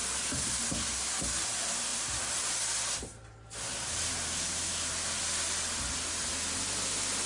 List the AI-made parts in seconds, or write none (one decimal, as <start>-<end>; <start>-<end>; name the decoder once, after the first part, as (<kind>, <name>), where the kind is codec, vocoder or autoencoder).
0.0-0.6 (vocoder, BigVGAN v2); 1.9-5.2